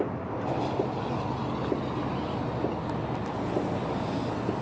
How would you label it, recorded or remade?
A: recorded